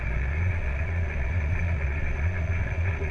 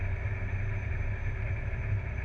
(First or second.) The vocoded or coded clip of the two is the first